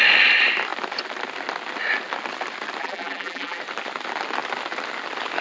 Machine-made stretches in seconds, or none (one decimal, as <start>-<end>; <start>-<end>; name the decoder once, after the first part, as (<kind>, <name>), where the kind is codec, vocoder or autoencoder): 2.8-3.6 (vocoder, BigVGAN v2)